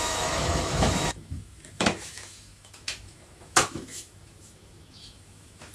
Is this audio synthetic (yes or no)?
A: yes